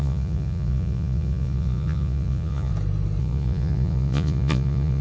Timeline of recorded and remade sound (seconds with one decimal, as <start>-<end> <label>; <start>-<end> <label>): 0.0-2.7 remade; 2.7-3.2 recorded; 3.2-5.0 remade

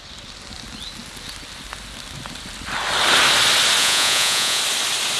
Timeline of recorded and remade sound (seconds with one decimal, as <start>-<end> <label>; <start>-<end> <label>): 0.0-3.8 recorded; 3.8-4.6 remade; 4.6-5.2 recorded

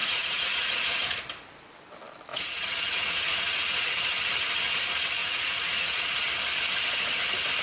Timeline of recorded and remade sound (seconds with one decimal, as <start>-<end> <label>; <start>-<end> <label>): 0.0-1.2 remade; 1.2-2.3 recorded; 2.3-3.9 remade; 3.9-5.2 recorded; 5.2-6.1 remade; 6.1-7.6 recorded

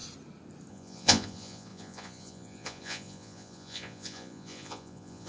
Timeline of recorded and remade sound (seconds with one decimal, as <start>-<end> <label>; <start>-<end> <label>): 0.0-0.7 recorded; 0.7-5.3 remade

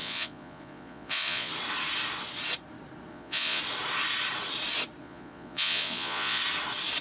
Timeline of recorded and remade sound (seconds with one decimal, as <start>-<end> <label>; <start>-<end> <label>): 0.0-1.5 remade; 1.5-3.1 recorded; 3.1-3.6 remade; 3.6-5.0 recorded; 5.0-6.4 remade; 6.4-7.0 recorded

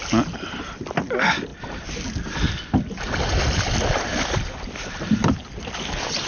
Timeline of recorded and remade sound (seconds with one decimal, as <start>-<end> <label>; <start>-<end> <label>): 0.0-6.3 recorded